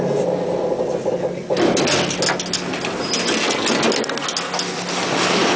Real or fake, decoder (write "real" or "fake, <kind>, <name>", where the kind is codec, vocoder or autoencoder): real